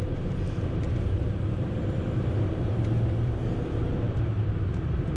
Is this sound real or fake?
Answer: fake